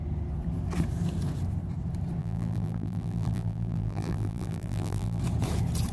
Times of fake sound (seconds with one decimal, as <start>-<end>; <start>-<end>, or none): 2.2-5.2